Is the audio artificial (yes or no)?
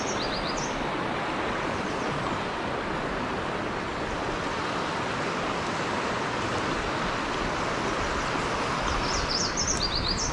no